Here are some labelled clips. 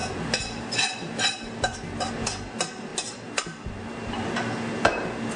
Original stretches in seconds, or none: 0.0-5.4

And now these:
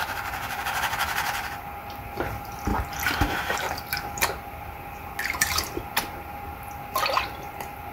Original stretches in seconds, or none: 0.0-7.9

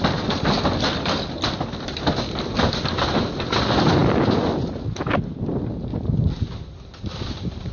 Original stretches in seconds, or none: 0.0-7.7

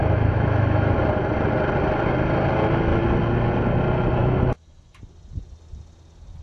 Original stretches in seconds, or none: 1.0-4.2; 5.0-6.4